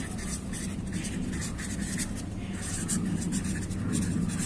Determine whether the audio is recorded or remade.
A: recorded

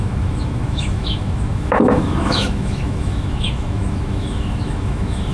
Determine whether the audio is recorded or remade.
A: remade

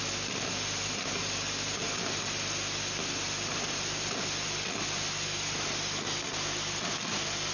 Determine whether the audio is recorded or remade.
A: recorded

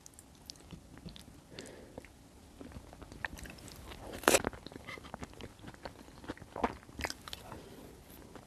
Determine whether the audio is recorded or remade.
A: recorded